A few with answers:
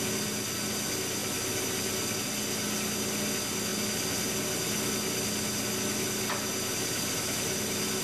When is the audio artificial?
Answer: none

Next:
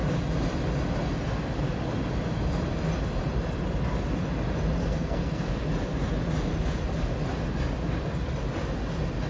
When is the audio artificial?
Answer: 4.8-5.5 (codec, SNAC)